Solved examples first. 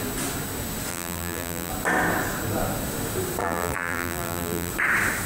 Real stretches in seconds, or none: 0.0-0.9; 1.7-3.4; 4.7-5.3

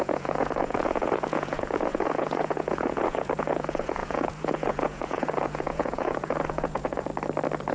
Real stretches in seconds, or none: 7.1-7.7